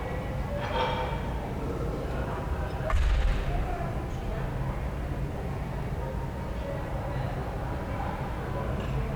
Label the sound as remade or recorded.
recorded